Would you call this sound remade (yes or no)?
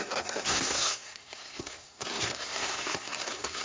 yes